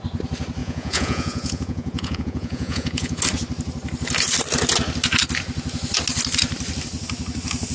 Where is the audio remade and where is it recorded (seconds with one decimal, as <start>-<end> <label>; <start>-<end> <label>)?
0.0-0.6 recorded; 0.6-3.2 remade; 3.2-7.7 recorded